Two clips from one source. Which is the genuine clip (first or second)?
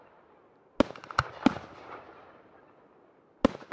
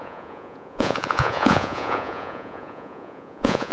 first